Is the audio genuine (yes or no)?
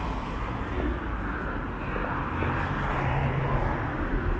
yes